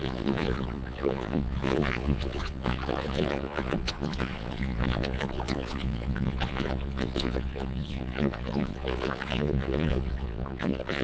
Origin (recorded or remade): remade